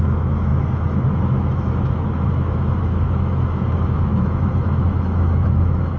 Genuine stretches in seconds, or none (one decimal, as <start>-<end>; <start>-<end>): none